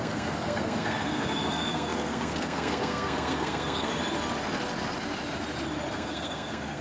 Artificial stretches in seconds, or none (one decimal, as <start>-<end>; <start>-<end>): 0.0-3.9; 5.9-6.8